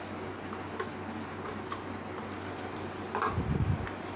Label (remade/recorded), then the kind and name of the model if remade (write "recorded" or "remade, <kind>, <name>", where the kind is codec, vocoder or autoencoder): recorded